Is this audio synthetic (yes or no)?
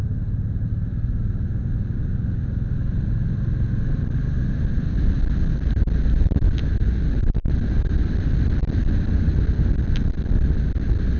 no